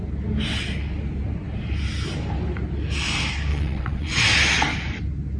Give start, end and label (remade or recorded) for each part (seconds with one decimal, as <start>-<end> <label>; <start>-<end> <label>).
0.0-3.5 recorded; 3.5-4.2 remade; 4.2-5.4 recorded